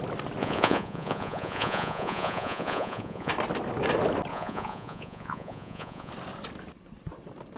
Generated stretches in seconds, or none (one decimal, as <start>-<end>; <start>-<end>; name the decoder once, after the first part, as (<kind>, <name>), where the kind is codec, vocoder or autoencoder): 0.4-3.3 (vocoder, Vocos); 4.3-6.1